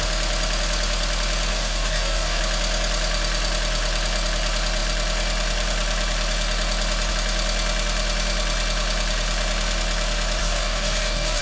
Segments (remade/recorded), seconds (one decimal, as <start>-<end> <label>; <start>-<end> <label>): 0.0-1.5 recorded; 1.5-2.4 remade; 2.4-10.4 recorded; 10.4-11.4 remade